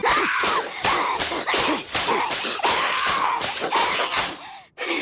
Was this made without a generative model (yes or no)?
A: yes